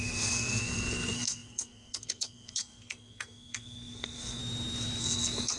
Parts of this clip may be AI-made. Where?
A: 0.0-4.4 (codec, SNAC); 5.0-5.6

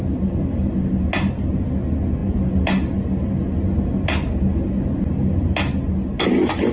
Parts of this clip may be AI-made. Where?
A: none

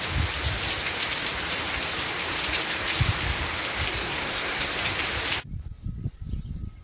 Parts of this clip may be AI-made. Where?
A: 4.0-4.7 (codec, SNAC)